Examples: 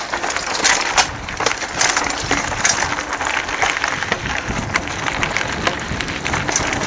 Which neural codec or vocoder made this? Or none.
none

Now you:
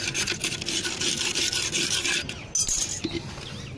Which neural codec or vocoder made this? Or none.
none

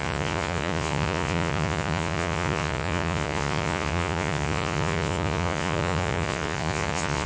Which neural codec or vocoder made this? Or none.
vocoder, Vocos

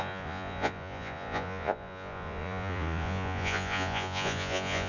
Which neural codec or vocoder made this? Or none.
vocoder, Vocos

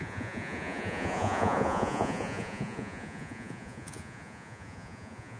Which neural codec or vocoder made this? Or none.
vocoder, Vocos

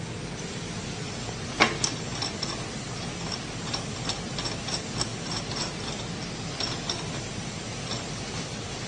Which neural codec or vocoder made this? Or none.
none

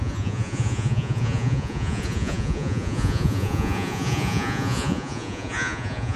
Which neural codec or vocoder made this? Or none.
vocoder, Vocos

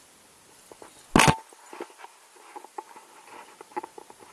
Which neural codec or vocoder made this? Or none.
none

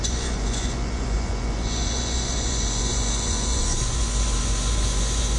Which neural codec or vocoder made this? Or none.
vocoder, Vocos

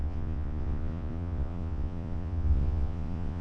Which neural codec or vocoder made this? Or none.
vocoder, Vocos